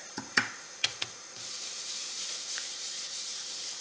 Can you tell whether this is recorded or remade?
remade